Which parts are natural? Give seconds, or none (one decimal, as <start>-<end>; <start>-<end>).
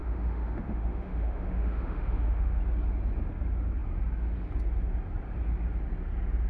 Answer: 2.6-6.5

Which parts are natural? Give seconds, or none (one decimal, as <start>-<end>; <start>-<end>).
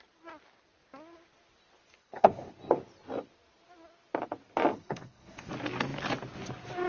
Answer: 0.0-2.0; 2.5-4.7; 5.5-6.9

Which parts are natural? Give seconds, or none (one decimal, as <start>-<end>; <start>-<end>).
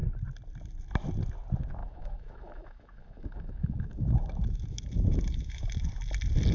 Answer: 0.0-1.8; 5.7-6.5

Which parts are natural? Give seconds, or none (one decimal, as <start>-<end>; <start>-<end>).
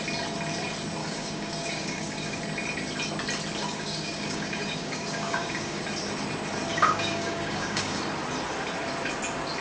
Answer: 0.0-1.0; 2.4-3.6; 5.8-6.7; 8.0-9.6